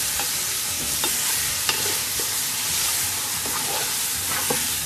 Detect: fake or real fake